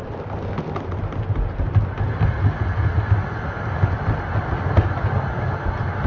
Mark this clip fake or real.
real